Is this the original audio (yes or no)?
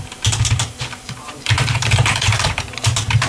no